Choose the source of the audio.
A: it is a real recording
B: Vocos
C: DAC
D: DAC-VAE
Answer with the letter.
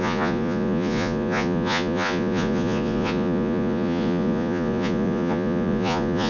B